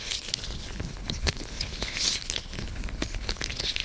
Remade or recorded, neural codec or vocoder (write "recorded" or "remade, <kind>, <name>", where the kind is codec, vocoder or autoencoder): remade, codec, HILCodec